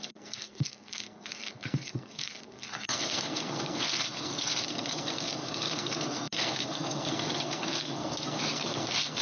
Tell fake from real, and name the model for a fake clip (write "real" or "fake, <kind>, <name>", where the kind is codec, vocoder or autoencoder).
fake, codec, SNAC